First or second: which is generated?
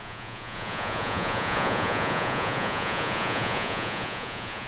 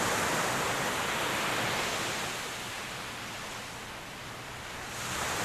first